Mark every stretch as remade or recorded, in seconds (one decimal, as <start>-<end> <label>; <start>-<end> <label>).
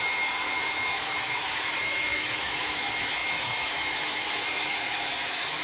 0.0-5.6 remade